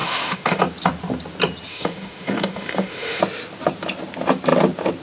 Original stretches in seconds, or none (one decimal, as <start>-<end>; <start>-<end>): 0.6-1.7; 3.2-5.0

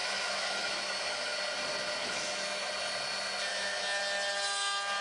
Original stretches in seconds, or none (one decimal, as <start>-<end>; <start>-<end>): 1.4-2.0; 2.7-3.5; 4.0-5.0

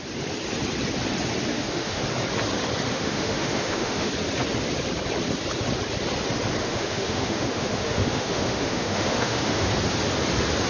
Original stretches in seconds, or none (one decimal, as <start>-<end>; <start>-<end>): 0.0-1.5; 2.0-2.9; 4.1-6.6; 9.7-10.7

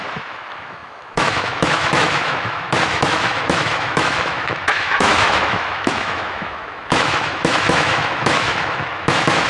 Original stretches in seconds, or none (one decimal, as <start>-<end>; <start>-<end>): none